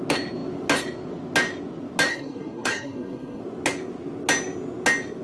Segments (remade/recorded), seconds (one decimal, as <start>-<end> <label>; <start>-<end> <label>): 0.0-2.1 recorded; 2.1-3.4 remade; 3.4-5.2 recorded